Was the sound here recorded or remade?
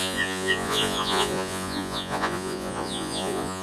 remade